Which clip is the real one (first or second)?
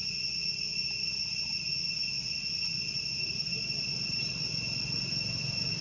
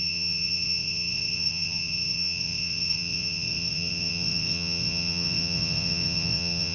first